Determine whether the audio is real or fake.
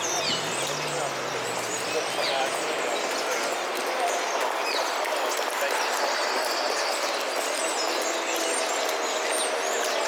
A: real